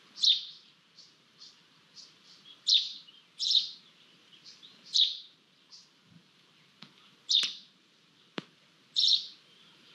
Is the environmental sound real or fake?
fake